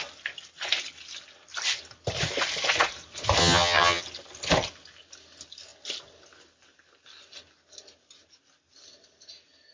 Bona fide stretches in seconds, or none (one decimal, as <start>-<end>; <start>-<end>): 0.0-3.4; 4.0-9.7